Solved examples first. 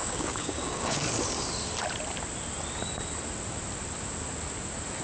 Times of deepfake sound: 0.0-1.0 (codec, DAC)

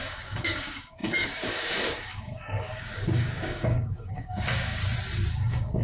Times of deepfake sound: 0.0-4.8 (codec, DAC); 5.3-5.8